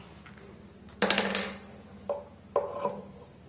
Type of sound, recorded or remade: recorded